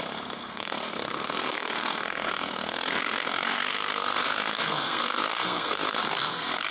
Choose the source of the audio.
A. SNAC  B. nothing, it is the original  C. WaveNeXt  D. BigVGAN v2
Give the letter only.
A